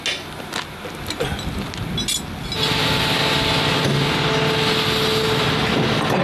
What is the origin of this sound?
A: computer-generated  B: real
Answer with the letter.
B